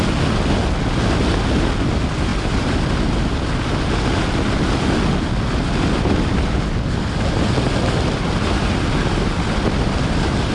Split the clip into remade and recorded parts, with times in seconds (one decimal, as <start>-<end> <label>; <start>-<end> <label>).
0.0-2.3 recorded; 2.3-2.9 remade; 2.9-10.5 recorded